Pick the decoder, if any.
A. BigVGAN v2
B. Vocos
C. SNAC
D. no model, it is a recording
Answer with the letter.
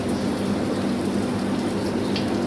D